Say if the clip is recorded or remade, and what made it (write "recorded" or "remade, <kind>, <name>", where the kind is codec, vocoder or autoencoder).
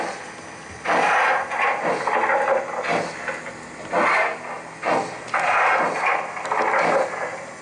recorded